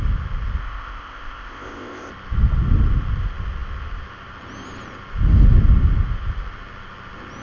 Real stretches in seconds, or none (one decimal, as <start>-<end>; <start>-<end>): 0.0-0.6; 2.1-7.4